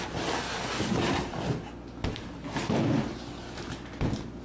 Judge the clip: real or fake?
real